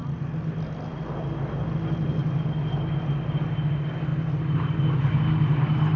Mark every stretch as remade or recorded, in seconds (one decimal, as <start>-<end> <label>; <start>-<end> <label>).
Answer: 0.0-6.0 recorded